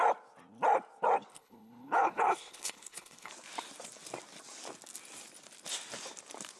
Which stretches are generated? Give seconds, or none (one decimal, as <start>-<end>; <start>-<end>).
1.3-3.3

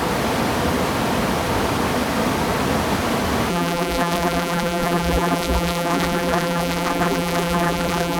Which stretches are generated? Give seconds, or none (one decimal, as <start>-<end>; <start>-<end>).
3.5-8.2

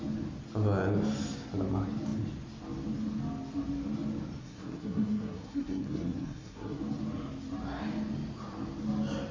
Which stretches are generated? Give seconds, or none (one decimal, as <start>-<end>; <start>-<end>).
4.4-6.8

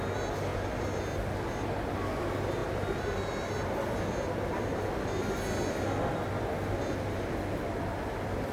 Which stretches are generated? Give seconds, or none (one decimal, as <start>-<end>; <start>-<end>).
none

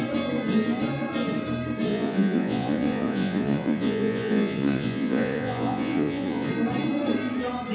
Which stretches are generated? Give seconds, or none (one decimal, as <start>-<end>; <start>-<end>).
1.9-6.5

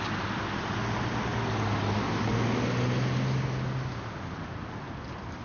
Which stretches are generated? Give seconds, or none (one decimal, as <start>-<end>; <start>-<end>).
none

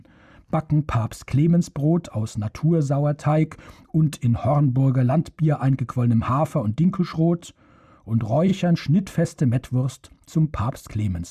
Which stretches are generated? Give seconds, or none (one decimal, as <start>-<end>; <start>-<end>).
none